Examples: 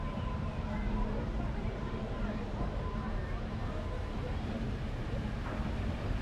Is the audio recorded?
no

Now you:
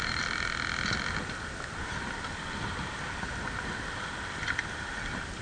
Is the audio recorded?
yes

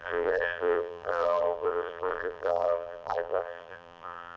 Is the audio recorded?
no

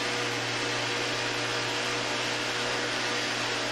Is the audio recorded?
yes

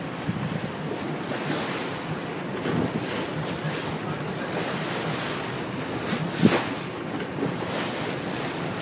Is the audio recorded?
yes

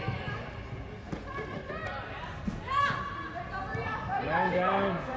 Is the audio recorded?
yes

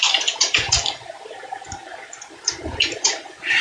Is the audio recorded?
no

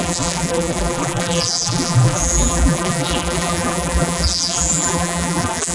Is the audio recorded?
no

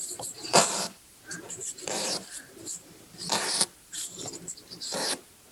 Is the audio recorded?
no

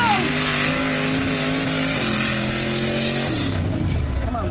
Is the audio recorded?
yes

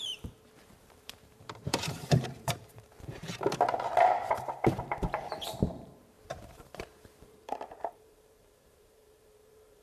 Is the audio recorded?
no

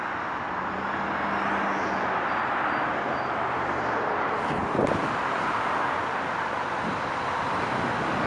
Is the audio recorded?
yes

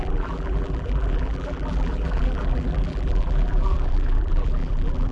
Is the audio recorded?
no